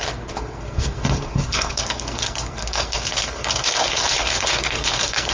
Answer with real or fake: fake